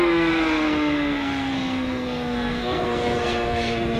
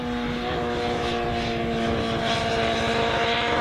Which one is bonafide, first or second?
second